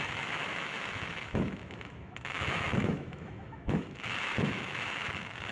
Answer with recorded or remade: remade